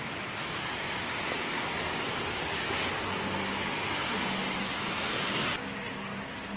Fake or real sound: real